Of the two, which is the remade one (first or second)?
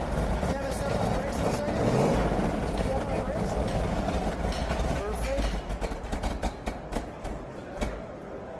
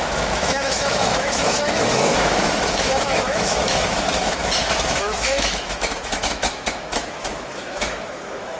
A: second